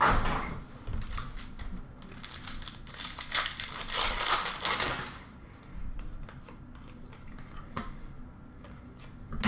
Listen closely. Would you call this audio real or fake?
real